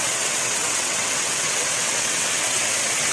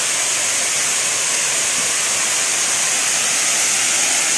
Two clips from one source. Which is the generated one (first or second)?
first